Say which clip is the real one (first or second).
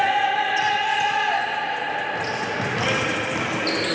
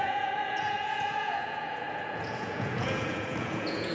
first